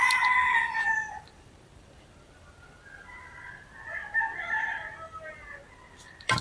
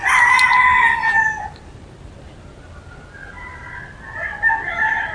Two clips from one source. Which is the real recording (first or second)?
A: second